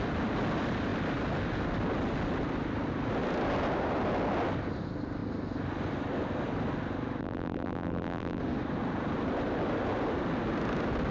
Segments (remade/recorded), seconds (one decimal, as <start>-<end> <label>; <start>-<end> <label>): 0.0-7.2 recorded; 7.2-8.4 remade; 8.4-11.1 recorded